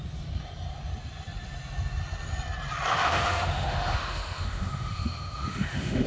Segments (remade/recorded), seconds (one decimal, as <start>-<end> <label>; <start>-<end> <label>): 0.0-2.9 recorded; 2.9-6.1 remade